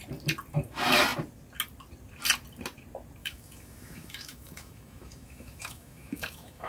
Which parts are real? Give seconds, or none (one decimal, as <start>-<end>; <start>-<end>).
0.0-3.2